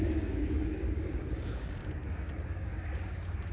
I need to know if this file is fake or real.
fake